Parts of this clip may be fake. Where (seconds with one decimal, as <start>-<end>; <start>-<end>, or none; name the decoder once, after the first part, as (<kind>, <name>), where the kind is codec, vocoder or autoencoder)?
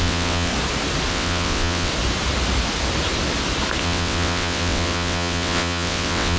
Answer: 0.0-0.5 (vocoder, WaveNeXt); 1.1-1.9; 3.8-6.4